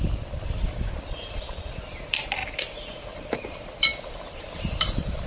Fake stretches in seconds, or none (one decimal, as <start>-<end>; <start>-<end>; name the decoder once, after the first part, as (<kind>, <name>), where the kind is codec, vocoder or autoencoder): 0.0-2.4 (vocoder, BigVGAN v2); 2.9-5.3